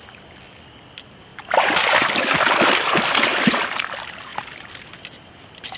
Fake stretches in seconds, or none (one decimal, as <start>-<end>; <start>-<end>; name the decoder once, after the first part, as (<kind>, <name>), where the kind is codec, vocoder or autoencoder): none